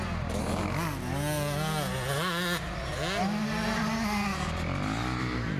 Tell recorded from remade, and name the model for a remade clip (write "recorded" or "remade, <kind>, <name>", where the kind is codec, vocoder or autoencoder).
recorded